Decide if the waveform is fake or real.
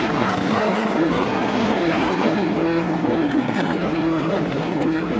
fake